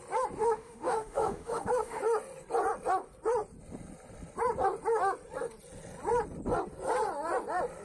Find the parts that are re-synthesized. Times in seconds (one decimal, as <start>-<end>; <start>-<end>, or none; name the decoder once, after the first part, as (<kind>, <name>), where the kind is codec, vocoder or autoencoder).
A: 0.4-2.0 (autoencoder, DAC-VAE)